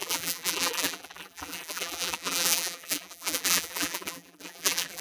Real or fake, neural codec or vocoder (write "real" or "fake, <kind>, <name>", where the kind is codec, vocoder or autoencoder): fake, vocoder, BigVGAN v2